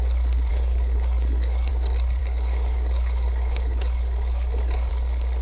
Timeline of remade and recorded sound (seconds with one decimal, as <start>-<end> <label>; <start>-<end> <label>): 0.0-0.5 recorded; 0.5-1.7 remade; 1.7-2.2 recorded; 2.2-4.9 remade; 4.9-5.4 recorded